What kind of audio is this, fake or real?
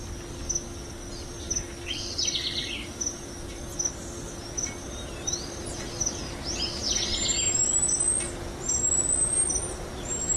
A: real